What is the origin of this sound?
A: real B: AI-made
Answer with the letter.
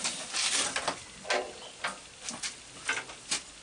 A